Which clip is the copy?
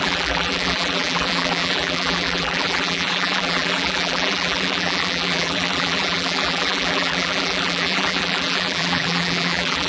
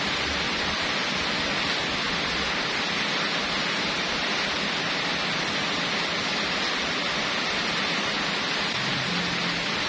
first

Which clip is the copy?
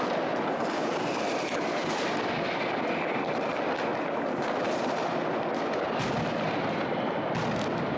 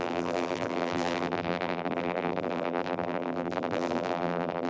second